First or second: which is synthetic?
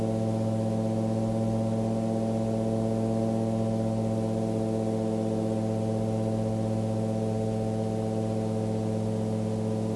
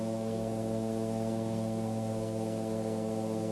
second